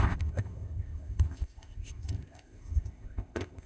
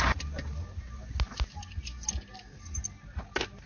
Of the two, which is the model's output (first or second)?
first